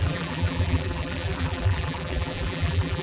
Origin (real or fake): fake